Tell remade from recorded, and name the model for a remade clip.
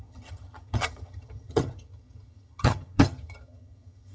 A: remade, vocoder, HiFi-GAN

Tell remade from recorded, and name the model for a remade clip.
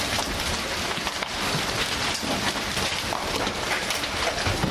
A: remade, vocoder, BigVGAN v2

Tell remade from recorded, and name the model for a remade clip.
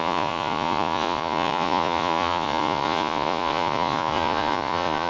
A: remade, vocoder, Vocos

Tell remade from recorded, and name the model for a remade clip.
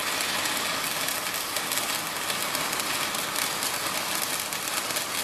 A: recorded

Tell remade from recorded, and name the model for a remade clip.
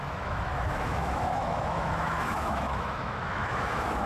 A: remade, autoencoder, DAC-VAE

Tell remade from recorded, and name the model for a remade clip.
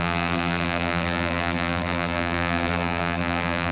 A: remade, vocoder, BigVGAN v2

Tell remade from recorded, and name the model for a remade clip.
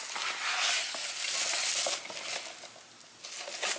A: recorded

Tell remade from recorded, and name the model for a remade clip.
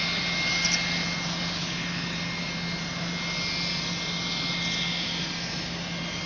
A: recorded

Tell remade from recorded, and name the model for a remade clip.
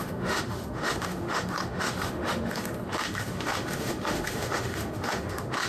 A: remade, autoencoder, DAC-VAE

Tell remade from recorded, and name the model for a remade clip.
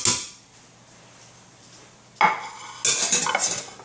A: recorded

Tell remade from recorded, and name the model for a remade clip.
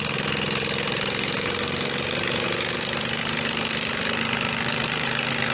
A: recorded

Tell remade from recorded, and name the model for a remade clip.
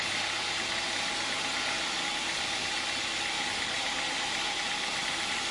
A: recorded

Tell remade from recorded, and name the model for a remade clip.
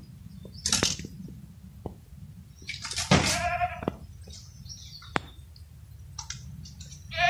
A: recorded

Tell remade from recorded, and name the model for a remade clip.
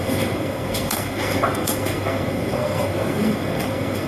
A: remade, codec, SNAC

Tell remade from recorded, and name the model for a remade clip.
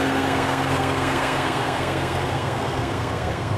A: remade, codec, SNAC